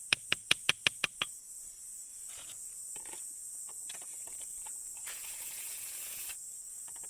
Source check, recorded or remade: remade